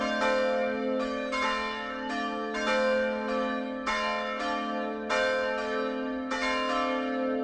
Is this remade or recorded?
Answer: recorded